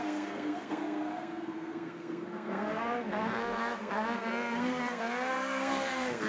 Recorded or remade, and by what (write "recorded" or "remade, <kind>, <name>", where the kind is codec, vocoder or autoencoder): remade, codec, SNAC